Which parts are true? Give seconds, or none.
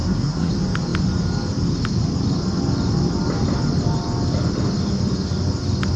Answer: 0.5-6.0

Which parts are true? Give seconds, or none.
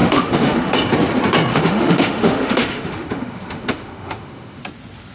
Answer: 0.7-1.5; 4.6-5.1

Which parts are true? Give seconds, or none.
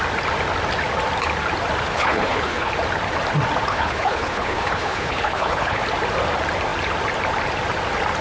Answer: 0.0-1.8; 2.7-3.7; 5.8-8.2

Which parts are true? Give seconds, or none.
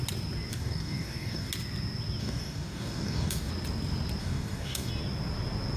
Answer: 0.0-0.5; 1.5-2.2; 3.5-4.2; 4.9-5.8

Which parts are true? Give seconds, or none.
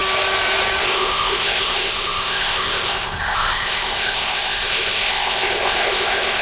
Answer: 0.0-0.8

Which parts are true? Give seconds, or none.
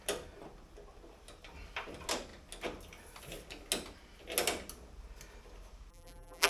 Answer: 0.0-5.9